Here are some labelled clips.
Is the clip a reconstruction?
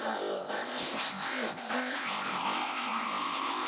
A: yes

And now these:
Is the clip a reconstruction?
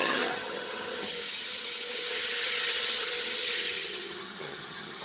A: yes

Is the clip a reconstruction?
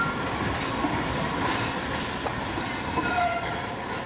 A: no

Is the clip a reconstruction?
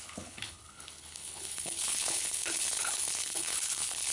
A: yes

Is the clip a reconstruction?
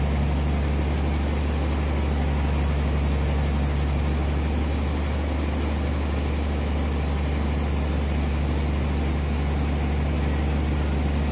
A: no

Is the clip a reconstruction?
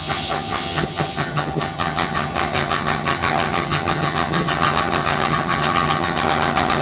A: yes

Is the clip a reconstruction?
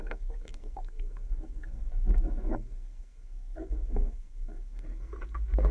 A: yes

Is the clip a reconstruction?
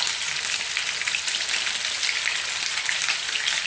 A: no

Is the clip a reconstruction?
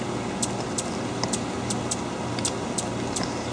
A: no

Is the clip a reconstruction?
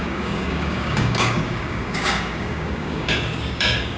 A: yes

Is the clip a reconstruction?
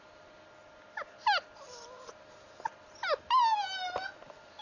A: no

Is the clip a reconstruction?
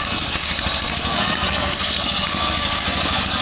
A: yes